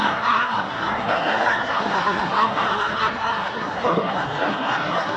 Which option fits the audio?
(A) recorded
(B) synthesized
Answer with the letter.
B